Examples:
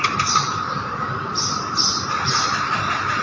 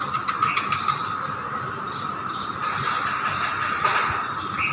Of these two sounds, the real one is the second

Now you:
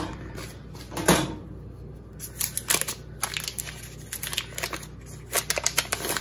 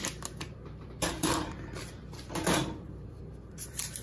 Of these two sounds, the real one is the first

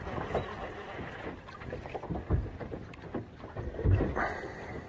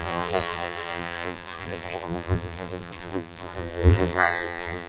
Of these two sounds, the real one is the first